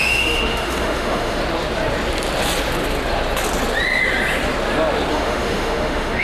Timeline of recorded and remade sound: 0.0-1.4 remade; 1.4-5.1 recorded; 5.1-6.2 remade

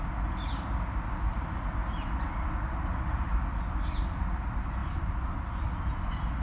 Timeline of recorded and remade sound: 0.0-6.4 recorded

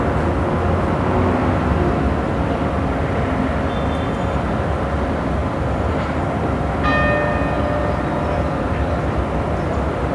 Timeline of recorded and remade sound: 0.0-10.1 recorded

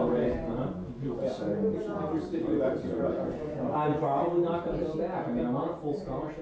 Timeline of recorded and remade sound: 0.0-6.4 recorded

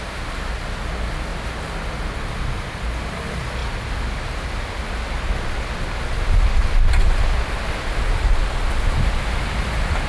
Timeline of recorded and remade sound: 0.0-10.1 recorded

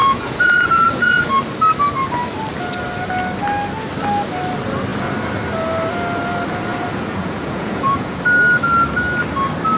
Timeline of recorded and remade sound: 0.0-1.3 remade; 1.3-6.7 recorded; 6.7-8.2 remade; 8.2-9.8 recorded